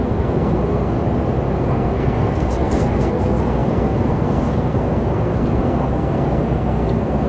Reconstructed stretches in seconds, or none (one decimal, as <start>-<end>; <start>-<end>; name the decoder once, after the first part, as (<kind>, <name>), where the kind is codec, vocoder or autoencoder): 0.0-1.0 (codec, SNAC); 1.6-7.3